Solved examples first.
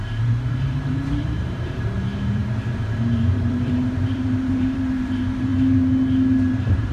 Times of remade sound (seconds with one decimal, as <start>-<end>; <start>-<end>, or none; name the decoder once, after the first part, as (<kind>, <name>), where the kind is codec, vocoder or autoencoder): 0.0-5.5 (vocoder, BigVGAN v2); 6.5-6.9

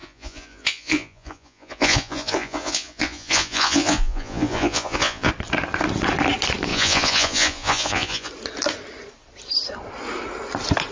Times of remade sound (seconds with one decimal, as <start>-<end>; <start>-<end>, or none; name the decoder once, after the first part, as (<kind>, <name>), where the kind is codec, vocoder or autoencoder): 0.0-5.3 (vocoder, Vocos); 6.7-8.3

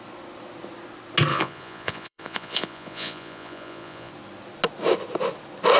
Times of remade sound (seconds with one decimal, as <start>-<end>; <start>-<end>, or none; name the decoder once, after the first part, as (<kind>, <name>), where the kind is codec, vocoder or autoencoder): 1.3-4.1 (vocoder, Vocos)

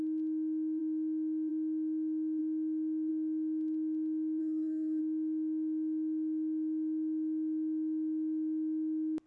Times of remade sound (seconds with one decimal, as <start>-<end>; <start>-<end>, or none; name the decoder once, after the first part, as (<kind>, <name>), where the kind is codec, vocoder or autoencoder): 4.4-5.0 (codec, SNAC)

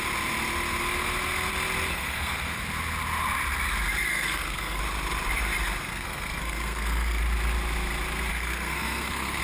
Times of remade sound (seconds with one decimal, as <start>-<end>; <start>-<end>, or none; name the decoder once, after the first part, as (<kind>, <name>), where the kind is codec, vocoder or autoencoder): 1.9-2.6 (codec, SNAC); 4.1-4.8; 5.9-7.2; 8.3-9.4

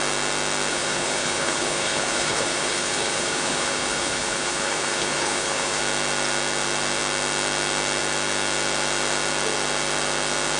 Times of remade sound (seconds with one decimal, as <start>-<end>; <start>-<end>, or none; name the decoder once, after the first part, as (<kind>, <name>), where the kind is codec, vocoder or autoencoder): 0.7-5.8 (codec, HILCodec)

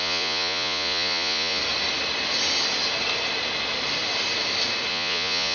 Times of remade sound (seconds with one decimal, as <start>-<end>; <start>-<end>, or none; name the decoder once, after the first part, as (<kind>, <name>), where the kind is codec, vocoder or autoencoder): 0.0-1.6 (vocoder, Vocos); 4.9-5.5